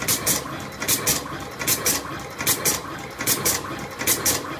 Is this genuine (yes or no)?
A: yes